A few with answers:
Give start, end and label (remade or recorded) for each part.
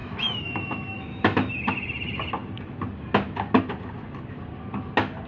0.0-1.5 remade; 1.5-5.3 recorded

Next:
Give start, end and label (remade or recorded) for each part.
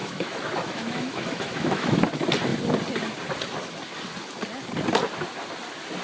0.0-2.0 remade; 2.0-6.0 recorded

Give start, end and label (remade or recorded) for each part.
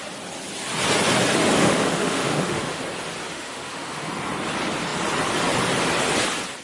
0.0-1.5 recorded; 1.5-2.8 remade; 2.8-3.3 recorded; 3.3-4.1 remade; 4.1-6.6 recorded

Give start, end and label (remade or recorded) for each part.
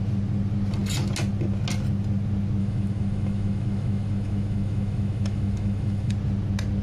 0.0-2.6 recorded; 2.6-6.1 remade; 6.1-6.8 recorded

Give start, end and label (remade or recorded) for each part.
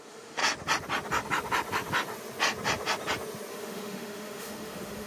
0.0-0.4 remade; 0.4-3.5 recorded; 3.5-5.1 remade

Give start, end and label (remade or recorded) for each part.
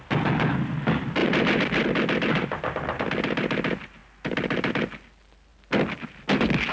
0.0-6.7 recorded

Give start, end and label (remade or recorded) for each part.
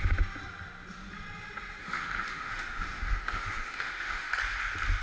0.0-1.8 recorded; 1.8-4.3 remade; 4.3-5.0 recorded